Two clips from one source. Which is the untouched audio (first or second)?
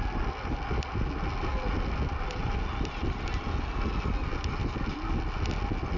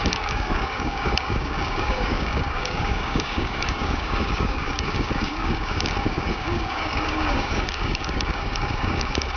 first